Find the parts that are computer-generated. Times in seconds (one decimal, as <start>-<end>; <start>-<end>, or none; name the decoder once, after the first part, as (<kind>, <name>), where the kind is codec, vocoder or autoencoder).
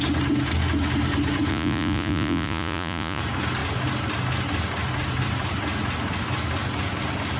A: 1.5-3.2 (vocoder, Vocos)